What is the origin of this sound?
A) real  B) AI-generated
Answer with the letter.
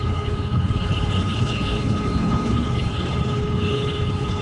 B